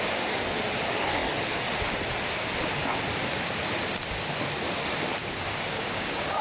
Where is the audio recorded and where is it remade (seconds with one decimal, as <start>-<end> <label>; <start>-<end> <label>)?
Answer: 0.0-5.2 recorded; 5.2-6.4 remade